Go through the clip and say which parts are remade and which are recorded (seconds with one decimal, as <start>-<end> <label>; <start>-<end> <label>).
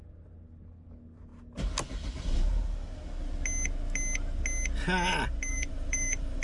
0.0-5.5 recorded; 5.5-6.4 remade